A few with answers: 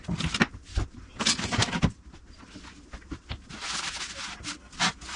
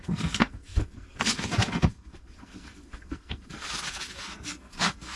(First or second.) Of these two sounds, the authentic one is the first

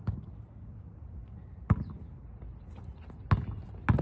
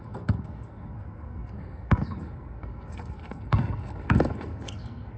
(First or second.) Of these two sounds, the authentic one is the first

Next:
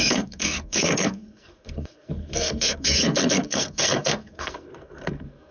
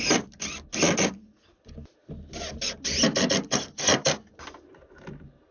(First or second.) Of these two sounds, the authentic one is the second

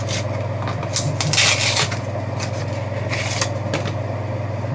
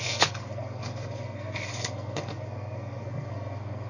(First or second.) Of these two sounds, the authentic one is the first